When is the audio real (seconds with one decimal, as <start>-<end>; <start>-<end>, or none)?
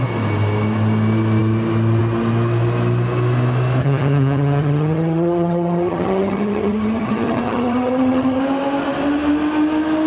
0.0-3.8; 8.4-10.1